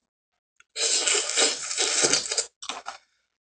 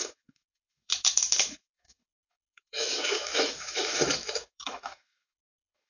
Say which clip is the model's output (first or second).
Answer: second